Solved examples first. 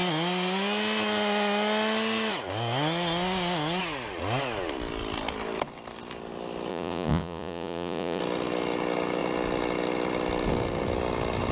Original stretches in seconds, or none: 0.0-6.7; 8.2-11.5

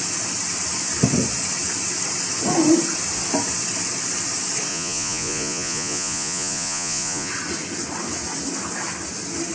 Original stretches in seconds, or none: 0.0-4.7; 7.3-9.5

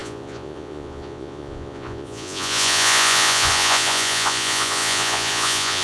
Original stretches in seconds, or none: none

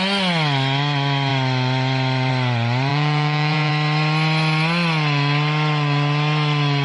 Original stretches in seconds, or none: 0.0-2.9; 3.7-6.8

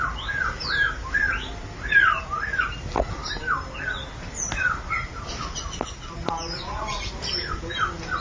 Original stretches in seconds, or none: 0.0-6.5; 7.1-8.2

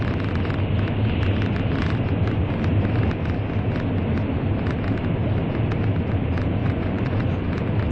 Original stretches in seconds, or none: 0.0-6.6; 7.4-7.9

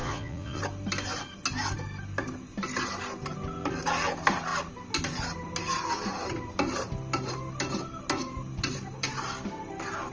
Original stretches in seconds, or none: 0.6-10.1